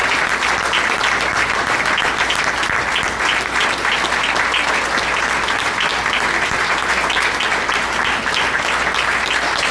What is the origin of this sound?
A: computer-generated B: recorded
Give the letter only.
B